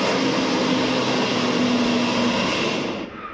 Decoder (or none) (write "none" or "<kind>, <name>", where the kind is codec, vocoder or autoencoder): none